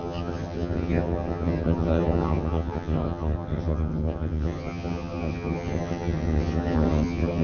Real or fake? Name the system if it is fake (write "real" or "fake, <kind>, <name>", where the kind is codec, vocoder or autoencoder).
fake, vocoder, HiFi-GAN